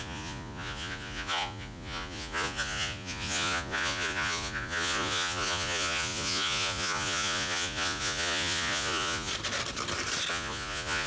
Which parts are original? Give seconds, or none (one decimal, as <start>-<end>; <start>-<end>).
9.3-10.3